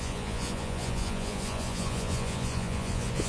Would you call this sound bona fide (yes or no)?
no